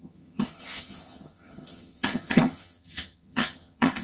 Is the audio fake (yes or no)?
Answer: yes